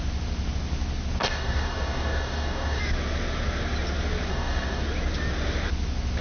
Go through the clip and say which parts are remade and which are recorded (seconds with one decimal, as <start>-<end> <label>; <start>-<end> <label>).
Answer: 0.0-1.2 recorded; 1.2-2.8 remade; 2.8-4.3 recorded; 4.3-4.8 remade; 4.8-6.2 recorded